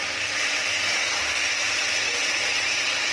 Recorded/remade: recorded